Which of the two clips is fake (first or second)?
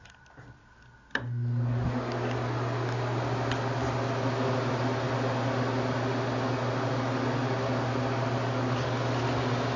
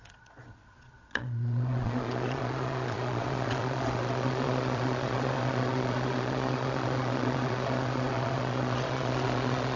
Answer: second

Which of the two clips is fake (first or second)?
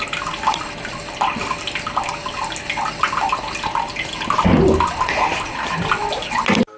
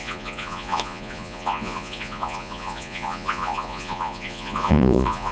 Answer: second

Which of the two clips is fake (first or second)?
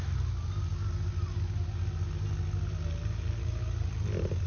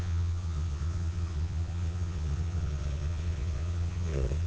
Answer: second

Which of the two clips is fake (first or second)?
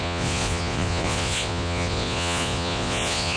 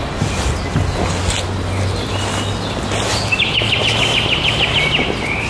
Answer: first